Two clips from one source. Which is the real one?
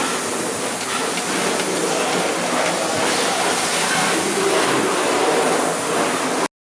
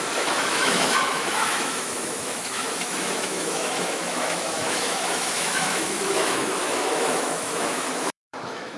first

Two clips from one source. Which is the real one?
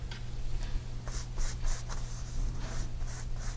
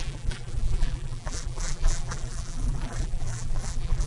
first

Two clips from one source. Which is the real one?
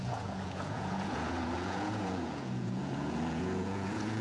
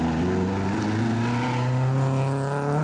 second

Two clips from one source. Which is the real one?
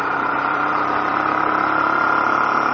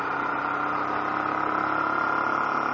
second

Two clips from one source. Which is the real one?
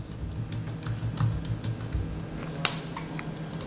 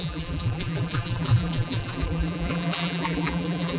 first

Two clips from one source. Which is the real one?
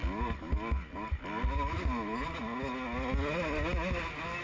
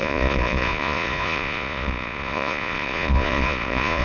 first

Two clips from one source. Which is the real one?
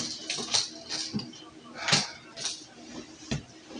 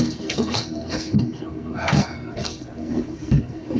first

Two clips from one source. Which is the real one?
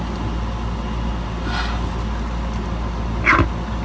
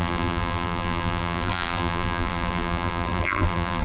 first